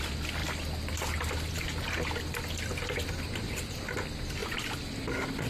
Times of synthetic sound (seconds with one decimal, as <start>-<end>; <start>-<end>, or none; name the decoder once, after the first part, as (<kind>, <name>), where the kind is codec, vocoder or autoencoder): none